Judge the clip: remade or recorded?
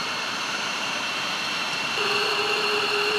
remade